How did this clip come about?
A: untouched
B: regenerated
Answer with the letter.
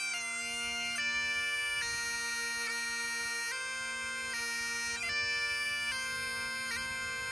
A